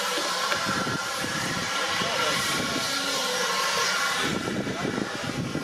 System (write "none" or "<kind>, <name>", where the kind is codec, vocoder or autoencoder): vocoder, BigVGAN v2